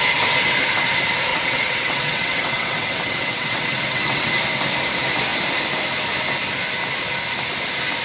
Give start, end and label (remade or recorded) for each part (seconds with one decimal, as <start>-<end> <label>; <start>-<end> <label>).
0.0-1.3 recorded; 1.3-4.3 remade; 4.3-8.0 recorded